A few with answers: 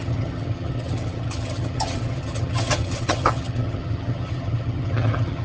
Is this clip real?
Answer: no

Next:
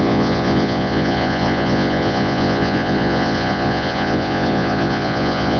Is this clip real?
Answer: no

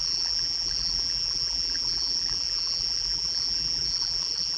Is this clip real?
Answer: no